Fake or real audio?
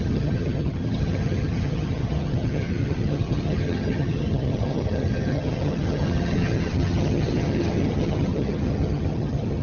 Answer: fake